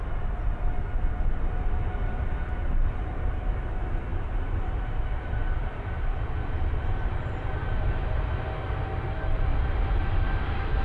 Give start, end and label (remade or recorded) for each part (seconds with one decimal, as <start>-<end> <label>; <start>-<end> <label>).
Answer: 0.0-2.6 recorded; 2.6-3.5 remade; 3.5-4.1 recorded; 4.1-6.1 remade; 6.1-10.8 recorded